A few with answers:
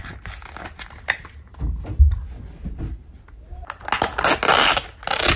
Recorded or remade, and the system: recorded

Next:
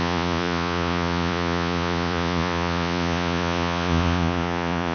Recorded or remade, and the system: remade, vocoder, Vocos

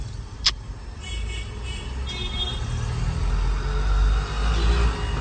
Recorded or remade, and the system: recorded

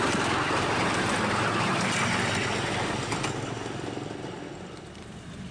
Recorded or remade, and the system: recorded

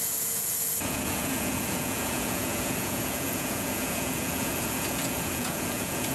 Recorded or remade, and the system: remade, vocoder, Vocos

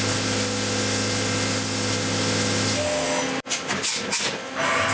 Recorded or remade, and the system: recorded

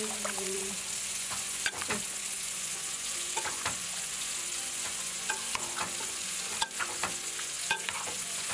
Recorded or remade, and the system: remade, vocoder, Vocos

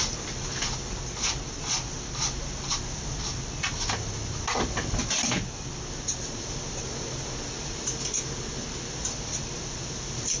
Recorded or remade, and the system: recorded